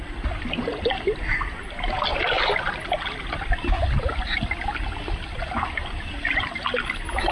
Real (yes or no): yes